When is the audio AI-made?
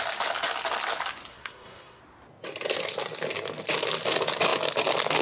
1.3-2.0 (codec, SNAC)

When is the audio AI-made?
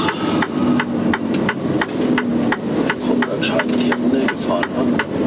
none